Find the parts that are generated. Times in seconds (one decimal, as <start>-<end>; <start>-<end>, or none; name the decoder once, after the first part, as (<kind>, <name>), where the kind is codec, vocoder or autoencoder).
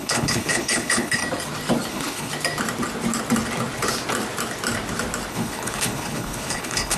0.0-1.2 (codec, HILCodec); 1.9-2.3; 5.3-7.0